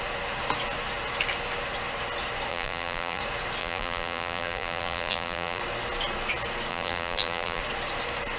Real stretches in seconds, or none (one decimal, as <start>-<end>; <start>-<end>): 0.0-2.5; 3.2-3.6; 5.6-6.7; 7.6-8.4